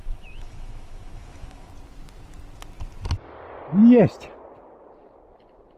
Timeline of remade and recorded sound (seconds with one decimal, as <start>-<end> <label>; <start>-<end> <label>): 0.0-1.7 remade; 1.7-5.8 recorded